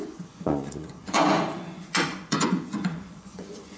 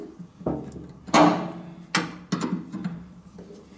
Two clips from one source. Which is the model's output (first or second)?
first